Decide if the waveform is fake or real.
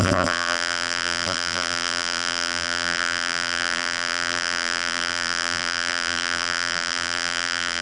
fake